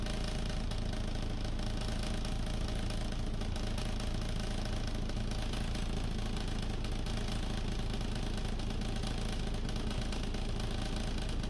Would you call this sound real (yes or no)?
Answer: yes